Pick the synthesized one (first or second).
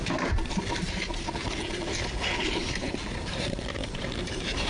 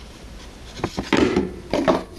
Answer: first